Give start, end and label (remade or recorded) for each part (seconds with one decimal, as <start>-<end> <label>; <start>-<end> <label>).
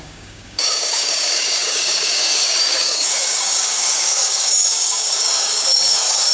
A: 0.0-6.3 remade